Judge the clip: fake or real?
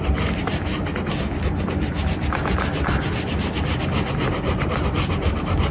real